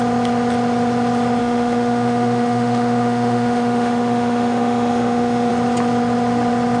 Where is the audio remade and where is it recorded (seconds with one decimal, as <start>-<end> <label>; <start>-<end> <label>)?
0.0-1.4 recorded; 1.4-5.5 remade; 5.5-6.8 recorded